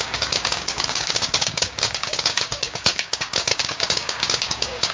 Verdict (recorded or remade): remade